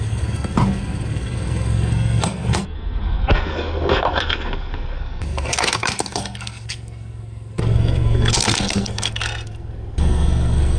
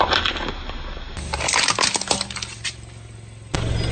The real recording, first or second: second